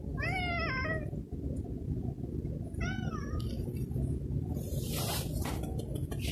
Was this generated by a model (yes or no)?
no